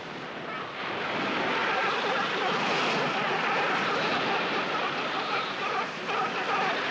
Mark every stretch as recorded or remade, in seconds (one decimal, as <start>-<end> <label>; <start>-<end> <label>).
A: 0.0-6.9 recorded